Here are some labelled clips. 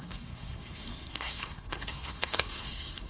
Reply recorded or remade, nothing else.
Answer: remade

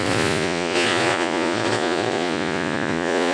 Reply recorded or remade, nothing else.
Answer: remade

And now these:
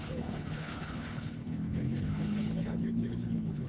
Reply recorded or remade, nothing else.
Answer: remade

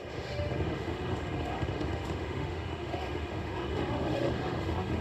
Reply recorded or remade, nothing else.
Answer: remade